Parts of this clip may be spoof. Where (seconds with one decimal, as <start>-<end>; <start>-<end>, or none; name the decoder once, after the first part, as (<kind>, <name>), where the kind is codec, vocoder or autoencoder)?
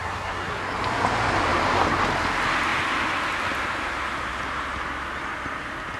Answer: 0.0-0.6 (codec, SNAC)